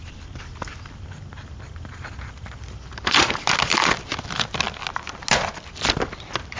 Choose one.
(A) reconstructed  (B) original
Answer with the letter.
B